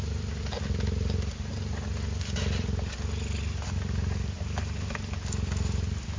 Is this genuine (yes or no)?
yes